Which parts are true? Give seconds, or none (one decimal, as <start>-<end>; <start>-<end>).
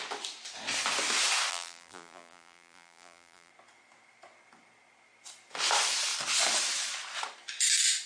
0.0-1.5; 3.5-8.1